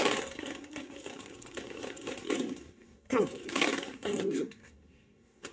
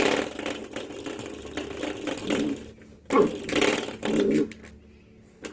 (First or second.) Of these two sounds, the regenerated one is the first